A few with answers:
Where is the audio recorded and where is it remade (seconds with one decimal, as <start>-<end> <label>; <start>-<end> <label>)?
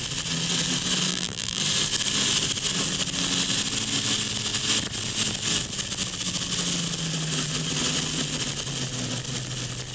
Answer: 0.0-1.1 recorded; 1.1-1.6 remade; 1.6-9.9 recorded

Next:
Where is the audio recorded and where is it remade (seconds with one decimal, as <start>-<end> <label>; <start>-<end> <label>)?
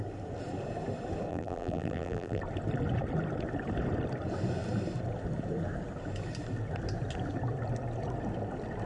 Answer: 0.0-1.3 recorded; 1.3-2.4 remade; 2.4-8.9 recorded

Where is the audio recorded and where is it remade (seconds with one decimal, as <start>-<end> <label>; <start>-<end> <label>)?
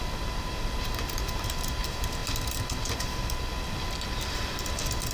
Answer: 0.0-5.1 recorded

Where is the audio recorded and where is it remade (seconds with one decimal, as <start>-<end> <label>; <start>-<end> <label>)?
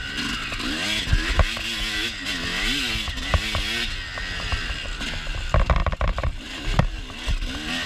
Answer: 0.0-5.8 recorded; 5.8-6.4 remade; 6.4-7.9 recorded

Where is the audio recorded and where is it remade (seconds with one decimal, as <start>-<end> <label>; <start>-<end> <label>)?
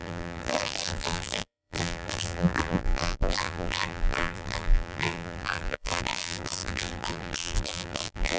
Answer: 0.0-8.4 remade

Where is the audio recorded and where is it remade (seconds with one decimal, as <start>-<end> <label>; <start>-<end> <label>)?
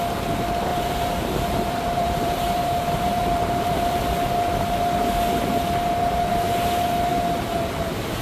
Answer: 0.0-0.7 recorded; 0.7-4.0 remade; 4.0-8.2 recorded